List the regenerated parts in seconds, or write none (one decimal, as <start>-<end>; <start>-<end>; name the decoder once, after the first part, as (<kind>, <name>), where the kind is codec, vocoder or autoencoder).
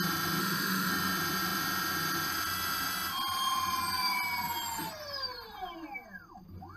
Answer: 0.4-0.9 (autoencoder, DAC-VAE)